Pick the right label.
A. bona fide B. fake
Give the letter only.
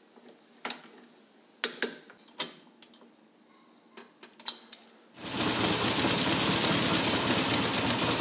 A